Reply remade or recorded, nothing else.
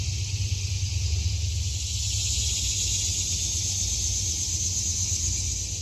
recorded